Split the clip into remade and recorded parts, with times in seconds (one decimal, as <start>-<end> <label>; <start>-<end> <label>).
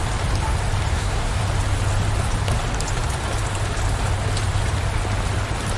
0.0-0.9 recorded; 0.9-1.4 remade; 1.4-5.8 recorded